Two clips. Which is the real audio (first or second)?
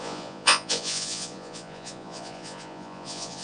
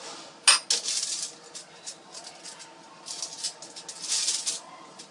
second